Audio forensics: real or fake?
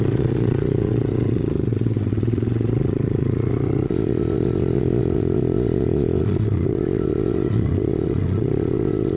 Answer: fake